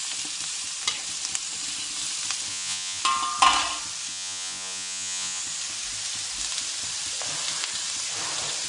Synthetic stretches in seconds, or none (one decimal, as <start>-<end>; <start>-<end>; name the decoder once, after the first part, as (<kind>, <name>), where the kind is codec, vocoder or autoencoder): 2.5-3.0 (vocoder, Vocos); 4.1-5.4